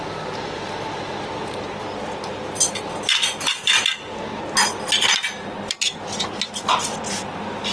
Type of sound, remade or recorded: recorded